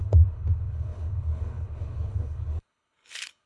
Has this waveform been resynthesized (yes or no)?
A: yes